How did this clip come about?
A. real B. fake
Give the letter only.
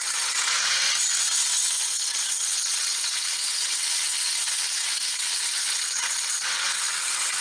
B